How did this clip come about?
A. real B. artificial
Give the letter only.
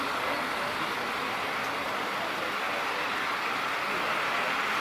A